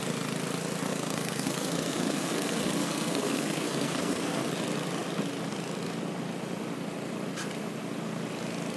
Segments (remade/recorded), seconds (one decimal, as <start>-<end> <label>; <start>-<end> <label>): 0.0-0.9 recorded; 0.9-4.5 remade; 4.5-8.8 recorded